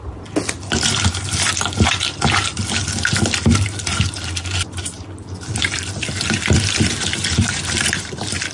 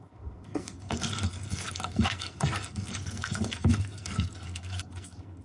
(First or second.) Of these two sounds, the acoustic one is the first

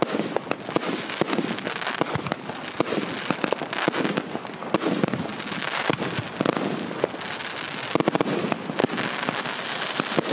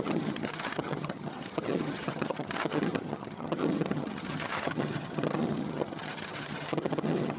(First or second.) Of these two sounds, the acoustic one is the first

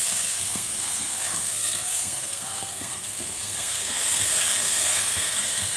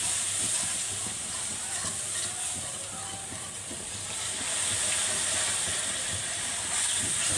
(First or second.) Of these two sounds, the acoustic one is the second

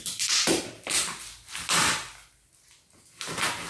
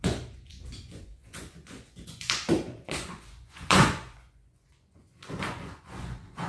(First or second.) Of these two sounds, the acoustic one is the first